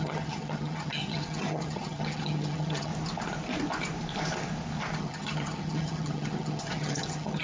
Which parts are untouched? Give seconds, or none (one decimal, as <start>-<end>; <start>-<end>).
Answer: 2.9-5.0